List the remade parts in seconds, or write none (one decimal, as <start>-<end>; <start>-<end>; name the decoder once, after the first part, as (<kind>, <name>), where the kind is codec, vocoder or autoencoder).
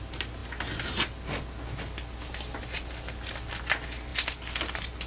none